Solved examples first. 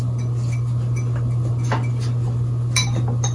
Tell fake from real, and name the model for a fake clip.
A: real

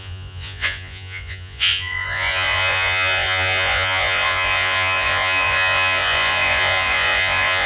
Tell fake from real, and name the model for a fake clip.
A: fake, vocoder, Vocos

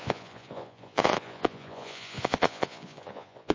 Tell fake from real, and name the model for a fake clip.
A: fake, vocoder, Vocos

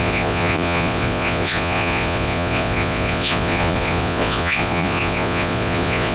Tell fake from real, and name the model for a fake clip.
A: fake, vocoder, Vocos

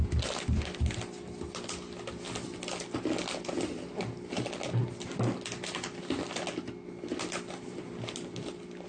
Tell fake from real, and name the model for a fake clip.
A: real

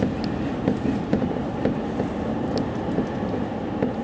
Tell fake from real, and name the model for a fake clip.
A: real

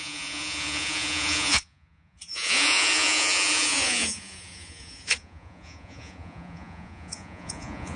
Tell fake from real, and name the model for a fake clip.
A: fake, vocoder, Vocos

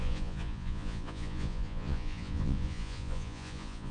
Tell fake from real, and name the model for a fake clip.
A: fake, vocoder, Vocos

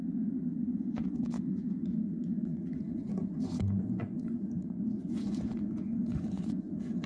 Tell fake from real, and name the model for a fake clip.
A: fake, vocoder, Vocos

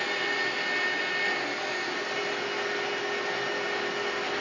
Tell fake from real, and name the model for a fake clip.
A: real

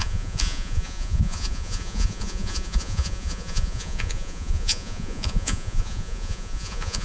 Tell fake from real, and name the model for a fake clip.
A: fake, vocoder, Vocos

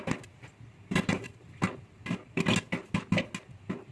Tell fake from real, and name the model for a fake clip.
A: real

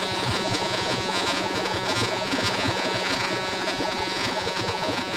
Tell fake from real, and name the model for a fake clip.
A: fake, vocoder, Vocos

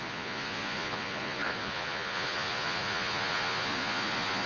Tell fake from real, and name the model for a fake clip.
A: fake, vocoder, Vocos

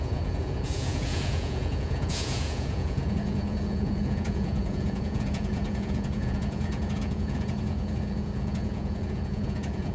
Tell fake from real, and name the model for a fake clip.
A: fake, vocoder, Vocos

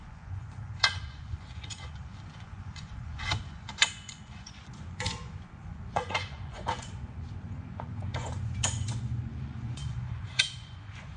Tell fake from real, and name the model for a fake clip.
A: fake, vocoder, Vocos